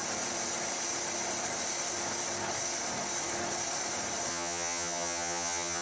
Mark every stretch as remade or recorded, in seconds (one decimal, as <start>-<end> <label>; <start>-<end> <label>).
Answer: 0.0-4.3 recorded; 4.3-5.8 remade